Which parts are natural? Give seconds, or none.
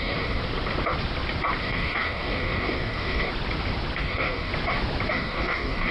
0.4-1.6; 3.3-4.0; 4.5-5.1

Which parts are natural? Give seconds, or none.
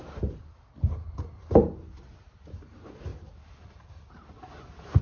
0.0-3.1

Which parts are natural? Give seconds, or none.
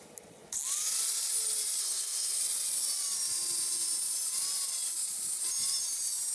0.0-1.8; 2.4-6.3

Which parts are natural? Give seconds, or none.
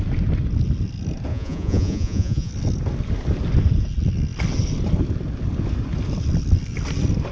0.0-1.3; 2.5-7.3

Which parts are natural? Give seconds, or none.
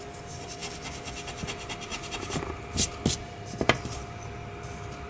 0.0-1.9; 2.6-3.2; 3.8-5.1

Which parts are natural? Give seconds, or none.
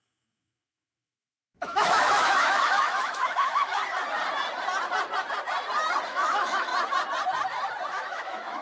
3.8-6.1; 6.7-7.9